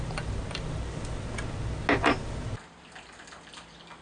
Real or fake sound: real